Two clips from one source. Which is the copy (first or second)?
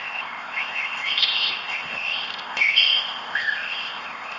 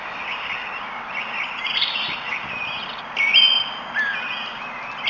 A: first